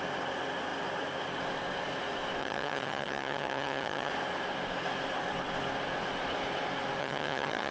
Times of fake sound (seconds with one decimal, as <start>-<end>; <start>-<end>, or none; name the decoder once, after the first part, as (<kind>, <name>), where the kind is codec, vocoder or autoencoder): 2.4-4.1 (vocoder, HiFi-GAN); 7.0-7.7